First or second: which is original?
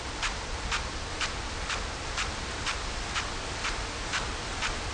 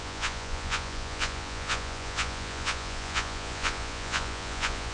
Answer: first